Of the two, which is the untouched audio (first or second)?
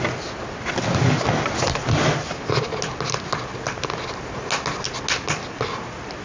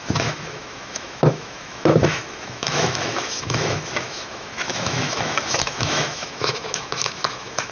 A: first